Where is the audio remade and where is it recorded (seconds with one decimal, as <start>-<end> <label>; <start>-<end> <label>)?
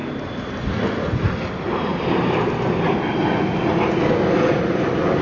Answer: 0.0-5.2 recorded